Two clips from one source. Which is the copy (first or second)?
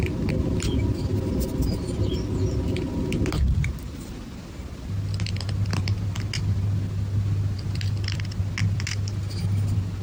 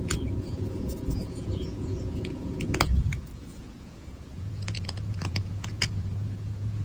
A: second